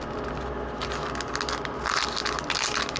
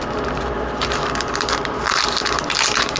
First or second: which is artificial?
second